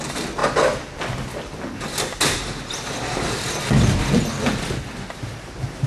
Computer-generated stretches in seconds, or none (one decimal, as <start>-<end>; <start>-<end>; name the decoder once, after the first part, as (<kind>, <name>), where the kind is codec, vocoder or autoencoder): none